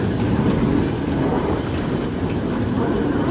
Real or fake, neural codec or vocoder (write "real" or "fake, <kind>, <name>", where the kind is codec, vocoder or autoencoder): fake, vocoder, BigVGAN v2